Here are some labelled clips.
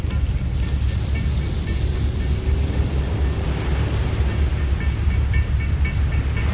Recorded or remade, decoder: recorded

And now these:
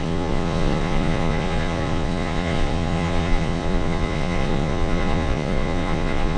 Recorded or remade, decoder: remade, vocoder, Vocos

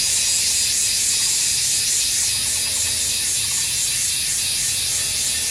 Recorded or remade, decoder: recorded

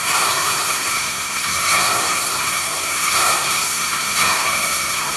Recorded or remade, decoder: remade, codec, SNAC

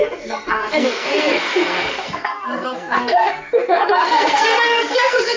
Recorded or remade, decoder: remade, codec, SNAC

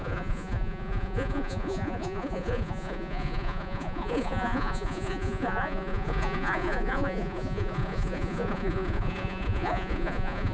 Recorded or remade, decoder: remade, vocoder, Vocos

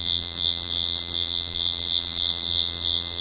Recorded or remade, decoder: remade, vocoder, BigVGAN v2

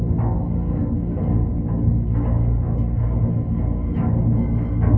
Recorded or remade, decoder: recorded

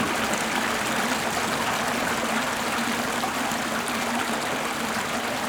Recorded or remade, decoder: recorded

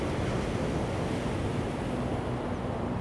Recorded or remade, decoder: recorded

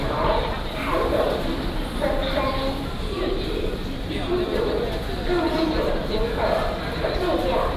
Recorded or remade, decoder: remade, vocoder, BigVGAN v2